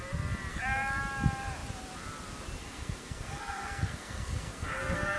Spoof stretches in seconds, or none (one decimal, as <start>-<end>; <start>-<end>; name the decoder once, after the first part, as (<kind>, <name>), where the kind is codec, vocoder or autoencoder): 0.5-1.0 (codec, SNAC); 2.6-5.2